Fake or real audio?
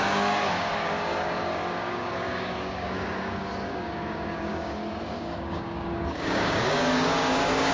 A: fake